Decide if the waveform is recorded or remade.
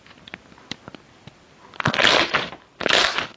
recorded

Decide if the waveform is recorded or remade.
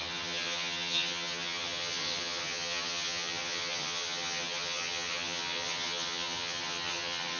remade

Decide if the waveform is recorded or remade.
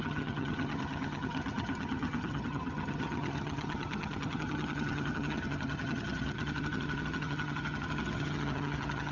remade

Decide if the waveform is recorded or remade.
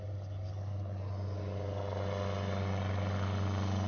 recorded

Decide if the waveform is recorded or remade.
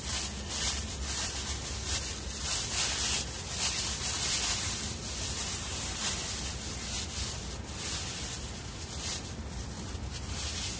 recorded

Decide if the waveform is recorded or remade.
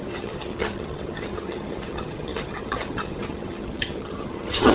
remade